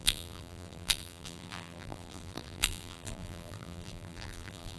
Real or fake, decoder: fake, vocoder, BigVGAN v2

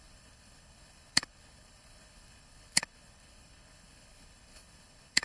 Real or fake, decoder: fake, codec, HILCodec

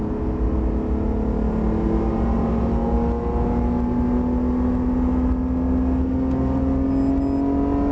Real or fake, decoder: real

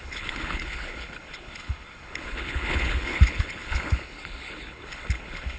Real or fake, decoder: fake, codec, HILCodec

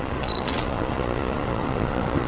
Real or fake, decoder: fake, vocoder, Vocos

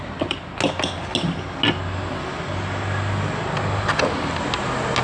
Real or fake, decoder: real